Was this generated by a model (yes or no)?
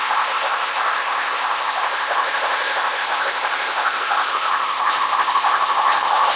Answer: yes